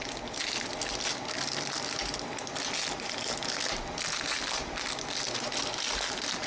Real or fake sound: real